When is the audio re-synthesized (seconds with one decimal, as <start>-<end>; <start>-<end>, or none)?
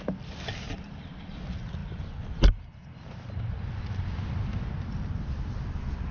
none